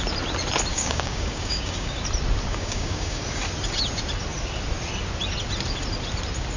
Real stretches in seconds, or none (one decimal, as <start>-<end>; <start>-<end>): 0.0-0.7; 2.0-2.5; 3.2-6.6